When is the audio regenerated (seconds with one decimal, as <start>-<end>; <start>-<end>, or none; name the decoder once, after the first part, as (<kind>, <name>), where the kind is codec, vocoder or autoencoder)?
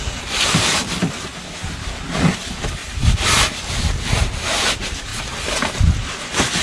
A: none